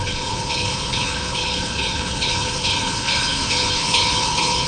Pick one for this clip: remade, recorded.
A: remade